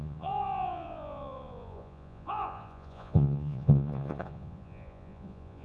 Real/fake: fake